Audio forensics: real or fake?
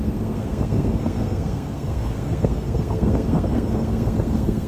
fake